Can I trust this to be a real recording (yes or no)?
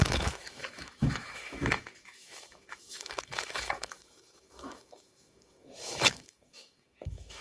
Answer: no